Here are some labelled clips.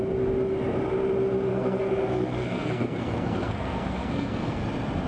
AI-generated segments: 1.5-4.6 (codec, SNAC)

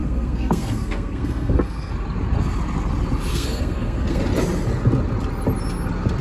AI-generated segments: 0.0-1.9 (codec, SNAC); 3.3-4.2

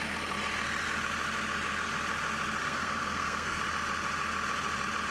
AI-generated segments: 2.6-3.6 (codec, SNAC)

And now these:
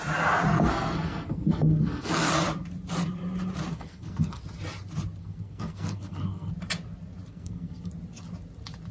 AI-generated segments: 0.5-2.3 (codec, SNAC); 3.7-4.4; 5.2-6.5; 7.3-7.9

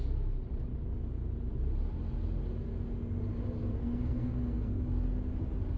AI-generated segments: 3.7-4.8 (codec, SNAC)